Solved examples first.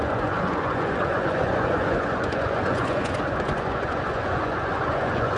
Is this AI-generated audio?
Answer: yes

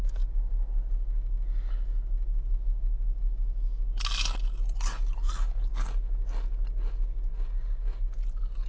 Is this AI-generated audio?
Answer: no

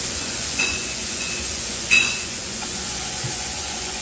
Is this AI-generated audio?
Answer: yes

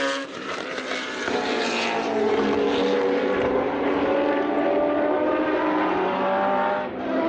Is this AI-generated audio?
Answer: yes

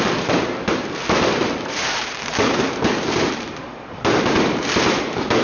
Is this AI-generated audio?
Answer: yes